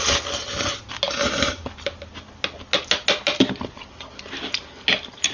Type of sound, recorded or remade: recorded